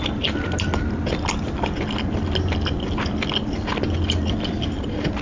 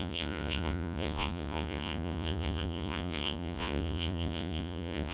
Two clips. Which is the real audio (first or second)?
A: first